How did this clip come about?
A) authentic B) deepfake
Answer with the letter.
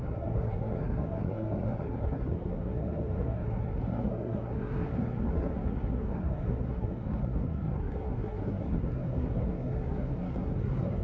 B